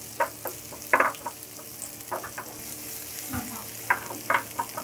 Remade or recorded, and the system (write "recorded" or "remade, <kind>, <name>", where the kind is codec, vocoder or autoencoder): recorded